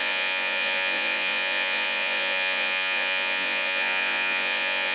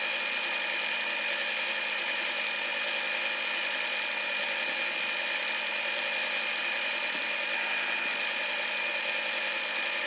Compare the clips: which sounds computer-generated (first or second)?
first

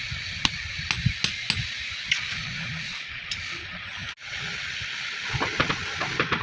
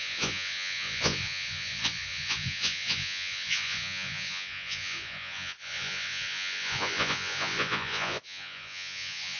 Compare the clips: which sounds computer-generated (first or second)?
second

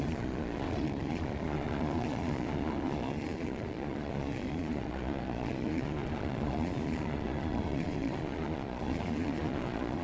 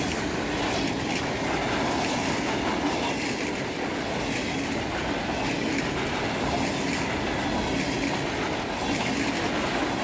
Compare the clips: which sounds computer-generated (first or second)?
first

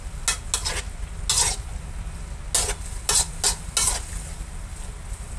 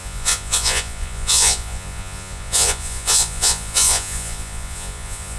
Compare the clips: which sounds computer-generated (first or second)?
second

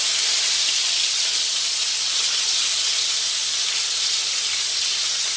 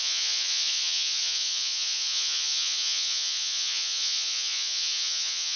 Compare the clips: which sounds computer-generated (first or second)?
second